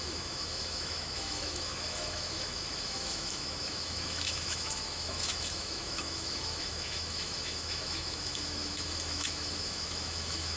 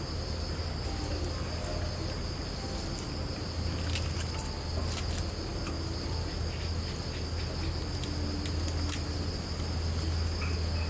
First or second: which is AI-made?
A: first